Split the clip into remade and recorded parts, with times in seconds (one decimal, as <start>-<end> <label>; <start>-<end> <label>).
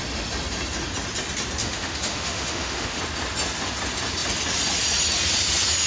0.0-1.6 recorded; 1.6-3.0 remade; 3.0-5.9 recorded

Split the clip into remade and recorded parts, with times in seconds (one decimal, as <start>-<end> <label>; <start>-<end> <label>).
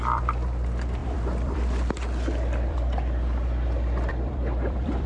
0.0-5.1 remade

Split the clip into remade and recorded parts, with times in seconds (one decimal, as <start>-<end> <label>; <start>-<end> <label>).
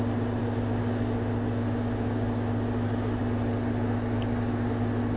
0.0-5.2 recorded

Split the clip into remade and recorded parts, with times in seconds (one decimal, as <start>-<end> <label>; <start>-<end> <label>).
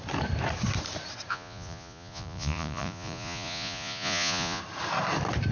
0.0-1.3 recorded; 1.3-4.6 remade; 4.6-5.5 recorded